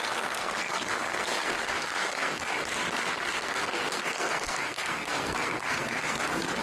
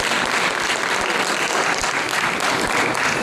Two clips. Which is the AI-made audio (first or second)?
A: first